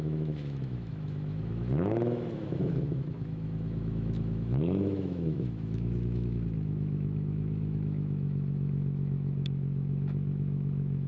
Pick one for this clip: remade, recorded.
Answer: remade